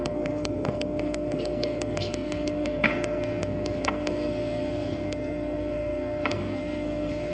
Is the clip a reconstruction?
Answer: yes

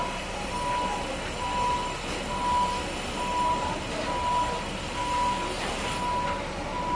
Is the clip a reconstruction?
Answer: no